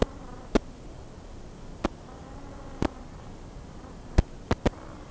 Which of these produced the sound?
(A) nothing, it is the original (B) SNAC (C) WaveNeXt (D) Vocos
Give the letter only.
A